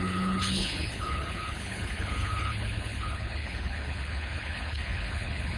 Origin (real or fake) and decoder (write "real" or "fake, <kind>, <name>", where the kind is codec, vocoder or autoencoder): fake, codec, HILCodec